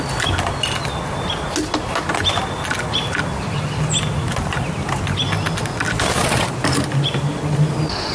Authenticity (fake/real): real